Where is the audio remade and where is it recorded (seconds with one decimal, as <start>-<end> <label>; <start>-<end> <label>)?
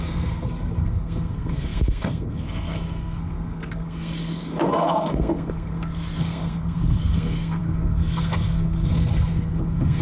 0.0-10.0 remade